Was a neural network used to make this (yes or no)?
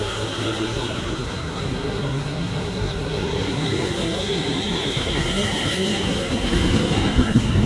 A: yes